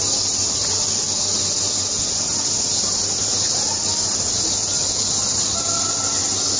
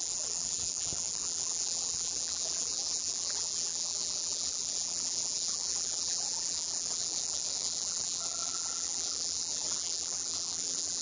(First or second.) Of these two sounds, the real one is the first